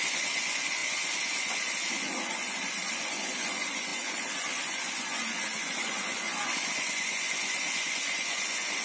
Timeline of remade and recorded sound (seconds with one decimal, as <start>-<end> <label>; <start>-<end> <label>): 0.0-8.8 remade